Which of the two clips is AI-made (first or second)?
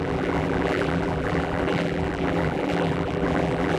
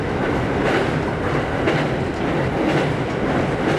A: first